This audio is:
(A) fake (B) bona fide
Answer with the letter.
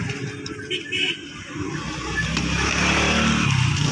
B